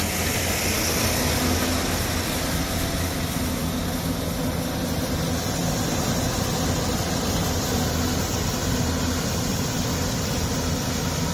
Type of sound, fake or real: real